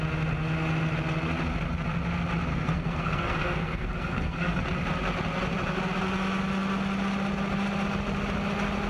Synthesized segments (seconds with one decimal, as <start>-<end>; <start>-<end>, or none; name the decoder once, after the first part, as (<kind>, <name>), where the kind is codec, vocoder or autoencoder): 2.5-4.6 (codec, SNAC)